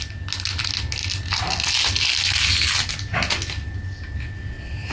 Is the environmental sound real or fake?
real